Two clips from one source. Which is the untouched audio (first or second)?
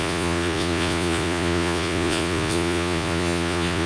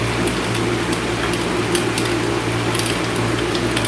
second